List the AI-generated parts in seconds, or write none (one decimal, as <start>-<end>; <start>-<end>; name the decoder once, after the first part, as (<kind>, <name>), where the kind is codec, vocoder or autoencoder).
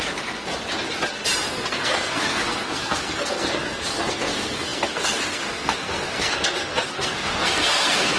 0.0-0.5 (codec, SNAC); 1.5-8.2